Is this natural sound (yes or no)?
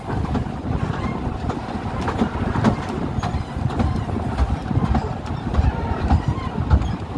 yes